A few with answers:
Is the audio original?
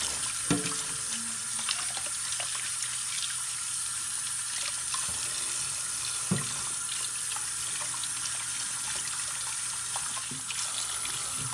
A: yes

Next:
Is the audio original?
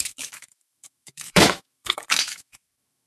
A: no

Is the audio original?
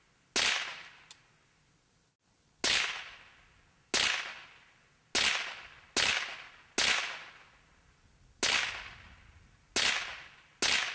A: yes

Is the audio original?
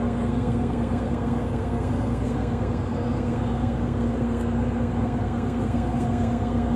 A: no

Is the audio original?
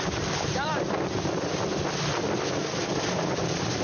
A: yes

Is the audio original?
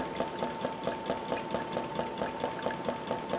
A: yes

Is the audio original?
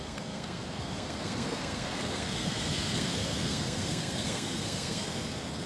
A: no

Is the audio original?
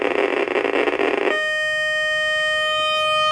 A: yes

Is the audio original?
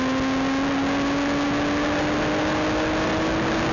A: yes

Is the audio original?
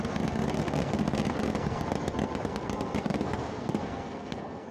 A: no